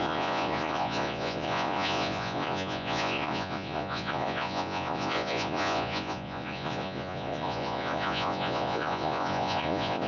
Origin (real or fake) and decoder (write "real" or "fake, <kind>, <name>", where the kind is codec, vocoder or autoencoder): fake, vocoder, Vocos